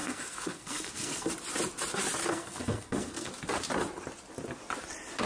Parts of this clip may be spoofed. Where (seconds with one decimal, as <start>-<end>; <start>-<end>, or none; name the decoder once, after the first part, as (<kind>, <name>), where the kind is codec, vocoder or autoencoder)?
0.0-1.3 (codec, SNAC); 2.3-3.3